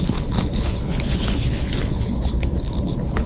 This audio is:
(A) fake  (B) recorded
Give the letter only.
A